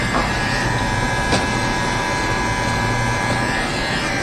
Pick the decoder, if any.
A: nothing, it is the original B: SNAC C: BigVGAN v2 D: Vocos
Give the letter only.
C